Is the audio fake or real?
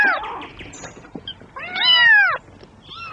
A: real